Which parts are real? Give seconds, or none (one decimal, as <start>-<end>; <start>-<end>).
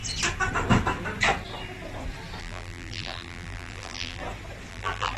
0.0-2.4; 4.2-4.7